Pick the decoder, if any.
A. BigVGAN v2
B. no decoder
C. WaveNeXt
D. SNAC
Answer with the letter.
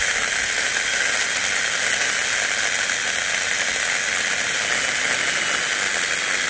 B